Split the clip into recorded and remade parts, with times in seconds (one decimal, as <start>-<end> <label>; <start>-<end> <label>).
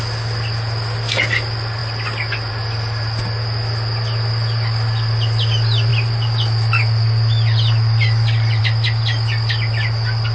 0.0-10.3 recorded